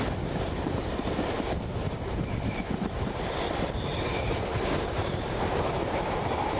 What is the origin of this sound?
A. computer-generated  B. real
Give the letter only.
A